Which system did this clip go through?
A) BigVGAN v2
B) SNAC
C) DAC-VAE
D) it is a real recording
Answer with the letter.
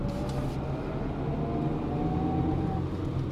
D